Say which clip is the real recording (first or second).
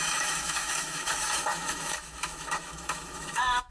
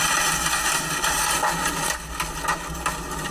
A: second